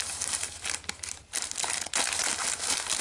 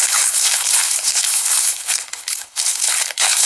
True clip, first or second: first